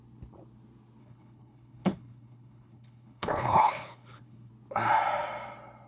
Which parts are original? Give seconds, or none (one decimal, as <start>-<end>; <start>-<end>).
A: 0.0-1.0; 4.5-5.9